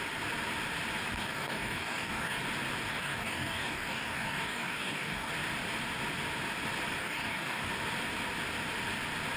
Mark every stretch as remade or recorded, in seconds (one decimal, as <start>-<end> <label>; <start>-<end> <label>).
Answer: 0.0-1.2 recorded; 1.2-2.4 remade; 2.4-2.9 recorded; 2.9-5.3 remade; 5.3-7.0 recorded; 7.0-7.7 remade; 7.7-9.4 recorded

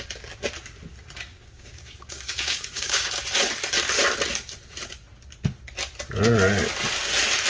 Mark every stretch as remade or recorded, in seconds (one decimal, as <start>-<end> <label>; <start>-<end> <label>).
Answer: 0.0-1.3 recorded; 1.3-3.1 remade; 3.1-7.5 recorded

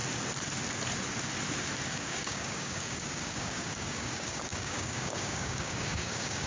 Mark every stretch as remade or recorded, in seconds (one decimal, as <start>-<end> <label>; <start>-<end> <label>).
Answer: 0.0-1.9 recorded; 1.9-6.5 remade

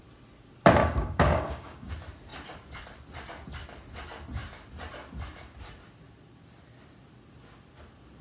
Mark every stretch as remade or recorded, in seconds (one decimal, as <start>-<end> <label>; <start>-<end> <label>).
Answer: 0.0-0.8 recorded; 0.8-1.9 remade; 1.9-8.2 recorded

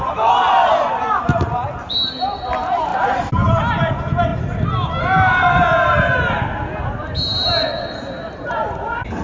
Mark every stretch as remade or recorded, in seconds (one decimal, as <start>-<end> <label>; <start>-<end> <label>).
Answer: 0.0-9.2 recorded

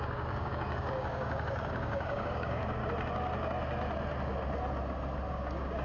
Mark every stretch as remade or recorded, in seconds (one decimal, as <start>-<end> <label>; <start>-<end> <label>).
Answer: 0.0-2.8 remade; 2.8-5.3 recorded; 5.3-5.8 remade

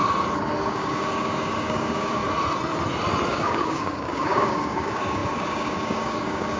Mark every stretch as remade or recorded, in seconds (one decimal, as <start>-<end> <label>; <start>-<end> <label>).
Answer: 0.0-0.6 recorded; 0.6-2.2 remade; 2.2-3.3 recorded; 3.3-6.6 remade